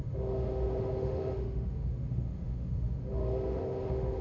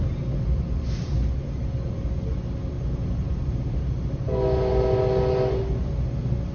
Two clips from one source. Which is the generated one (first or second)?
first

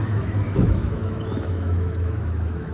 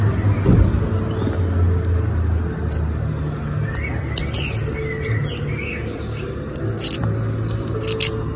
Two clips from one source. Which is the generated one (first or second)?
first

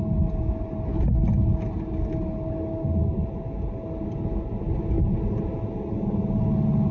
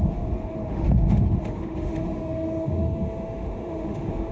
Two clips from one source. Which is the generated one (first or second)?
second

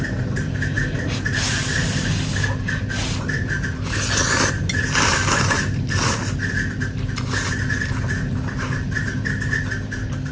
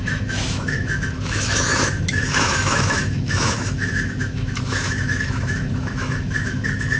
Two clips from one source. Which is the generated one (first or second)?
second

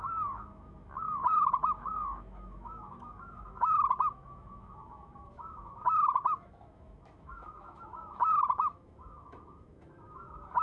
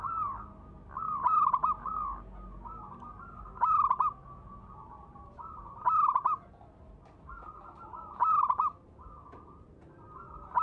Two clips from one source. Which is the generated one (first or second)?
first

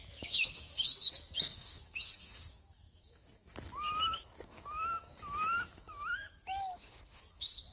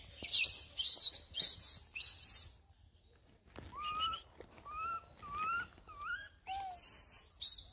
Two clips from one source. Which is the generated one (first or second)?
first